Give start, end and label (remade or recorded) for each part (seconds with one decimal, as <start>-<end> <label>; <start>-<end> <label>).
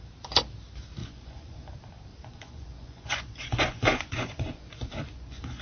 0.0-1.0 recorded; 1.0-1.7 remade; 1.7-2.1 recorded; 2.1-5.6 remade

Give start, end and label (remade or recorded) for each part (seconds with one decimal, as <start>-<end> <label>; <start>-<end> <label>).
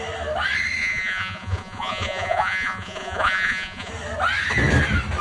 0.0-0.8 recorded; 0.8-3.9 remade; 3.9-5.2 recorded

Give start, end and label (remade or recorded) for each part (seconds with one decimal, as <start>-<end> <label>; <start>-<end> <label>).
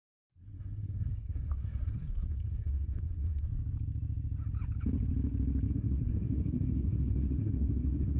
0.0-3.5 remade; 3.5-5.7 recorded; 5.7-8.2 remade